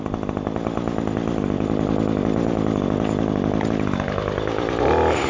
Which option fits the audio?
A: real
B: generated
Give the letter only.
A